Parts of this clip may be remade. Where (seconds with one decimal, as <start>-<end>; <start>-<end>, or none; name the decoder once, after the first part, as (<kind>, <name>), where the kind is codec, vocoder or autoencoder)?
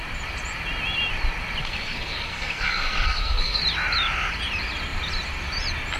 1.6-3.6 (codec, SNAC)